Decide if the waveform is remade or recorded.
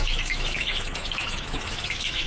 remade